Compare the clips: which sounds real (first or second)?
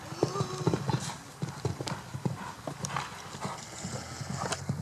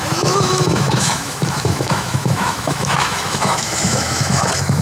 first